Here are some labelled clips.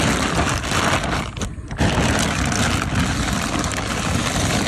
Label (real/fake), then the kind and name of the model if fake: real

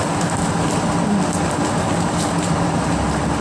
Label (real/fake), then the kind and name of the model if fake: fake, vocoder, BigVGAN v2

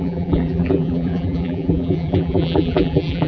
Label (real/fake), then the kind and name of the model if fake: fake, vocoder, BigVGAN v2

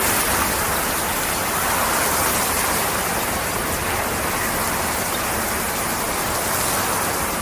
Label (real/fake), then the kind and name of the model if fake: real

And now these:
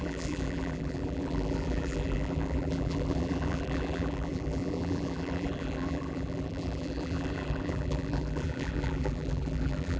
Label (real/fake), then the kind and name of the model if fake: fake, vocoder, BigVGAN v2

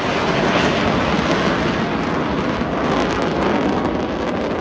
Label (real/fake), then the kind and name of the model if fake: real